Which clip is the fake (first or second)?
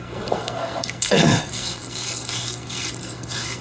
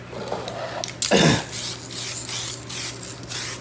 first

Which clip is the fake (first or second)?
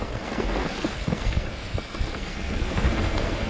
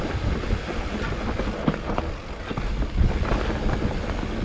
first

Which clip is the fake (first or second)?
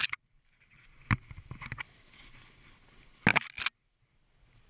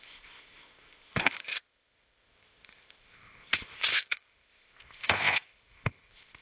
second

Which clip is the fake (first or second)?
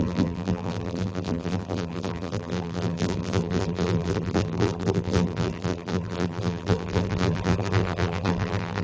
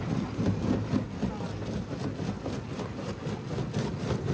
first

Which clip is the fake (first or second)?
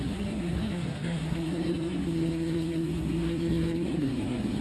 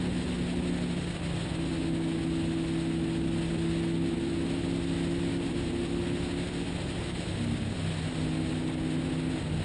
first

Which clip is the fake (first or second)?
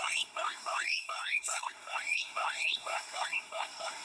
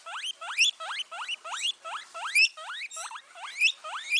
first